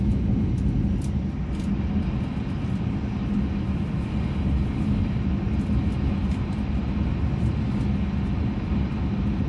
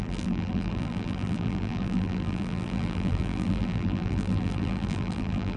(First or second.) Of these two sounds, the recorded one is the first